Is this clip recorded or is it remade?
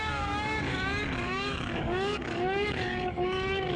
remade